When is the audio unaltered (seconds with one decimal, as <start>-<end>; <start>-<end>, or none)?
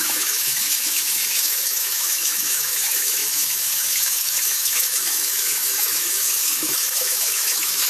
none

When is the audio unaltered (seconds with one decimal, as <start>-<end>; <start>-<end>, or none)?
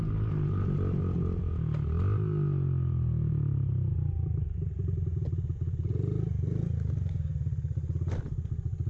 0.0-8.9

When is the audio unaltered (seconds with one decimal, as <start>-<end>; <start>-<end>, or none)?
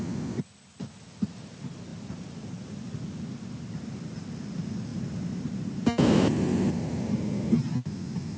0.0-4.9; 7.2-8.4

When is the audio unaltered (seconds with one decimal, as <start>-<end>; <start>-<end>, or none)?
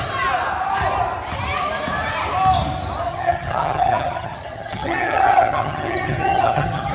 0.0-3.1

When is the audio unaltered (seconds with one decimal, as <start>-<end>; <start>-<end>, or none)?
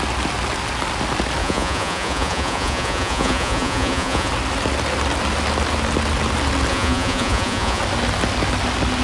0.0-1.4; 4.3-6.7; 7.8-9.0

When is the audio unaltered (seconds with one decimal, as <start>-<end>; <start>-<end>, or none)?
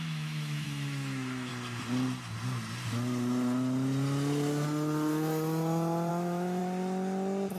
1.5-6.1; 6.6-7.6